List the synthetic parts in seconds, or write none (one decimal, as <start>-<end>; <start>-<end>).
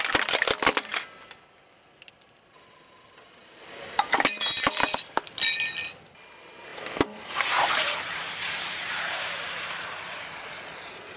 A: 6.7-11.2